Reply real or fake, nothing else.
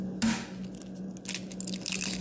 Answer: real